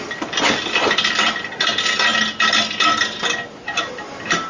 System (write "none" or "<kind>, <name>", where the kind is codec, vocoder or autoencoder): none